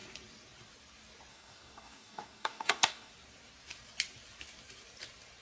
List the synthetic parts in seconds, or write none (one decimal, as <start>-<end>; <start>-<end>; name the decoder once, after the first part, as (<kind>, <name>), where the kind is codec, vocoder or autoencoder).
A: 1.3-3.1 (codec, DAC)

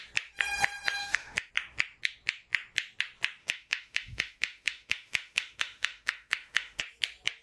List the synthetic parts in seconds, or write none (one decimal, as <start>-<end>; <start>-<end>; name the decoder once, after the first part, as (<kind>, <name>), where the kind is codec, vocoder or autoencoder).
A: 1.0-1.5 (autoencoder, DAC-VAE); 3.4-6.8

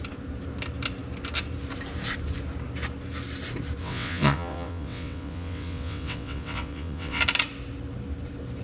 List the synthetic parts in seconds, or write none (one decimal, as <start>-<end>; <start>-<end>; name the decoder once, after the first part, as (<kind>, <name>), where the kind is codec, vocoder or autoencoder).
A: 3.8-7.2 (vocoder, WaveNeXt)

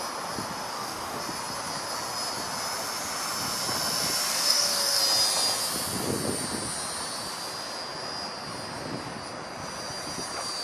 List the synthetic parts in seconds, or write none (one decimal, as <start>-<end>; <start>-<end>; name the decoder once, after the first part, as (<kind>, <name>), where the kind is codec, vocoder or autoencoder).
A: 0.7-1.2 (codec, DAC); 4.3-5.0

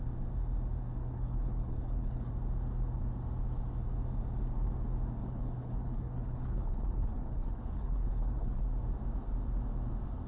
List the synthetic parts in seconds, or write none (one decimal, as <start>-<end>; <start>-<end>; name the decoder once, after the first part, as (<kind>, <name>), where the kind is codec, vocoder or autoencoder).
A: 1.0-2.3 (codec, HILCodec); 5.2-8.6

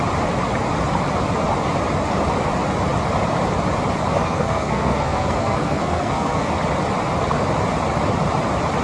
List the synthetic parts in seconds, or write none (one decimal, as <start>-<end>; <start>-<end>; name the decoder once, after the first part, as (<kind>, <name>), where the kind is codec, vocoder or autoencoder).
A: 4.1-6.5 (codec, SNAC)

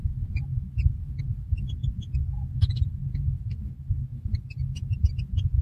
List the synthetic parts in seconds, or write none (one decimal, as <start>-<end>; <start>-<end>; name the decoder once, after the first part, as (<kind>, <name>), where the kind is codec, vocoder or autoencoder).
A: 4.1-5.1 (vocoder, BigVGAN v2)